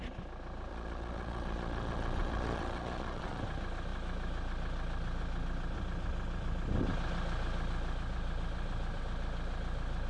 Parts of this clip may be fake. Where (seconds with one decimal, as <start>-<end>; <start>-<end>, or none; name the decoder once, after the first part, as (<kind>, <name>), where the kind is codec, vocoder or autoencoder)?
0.7-3.4 (vocoder, Vocos)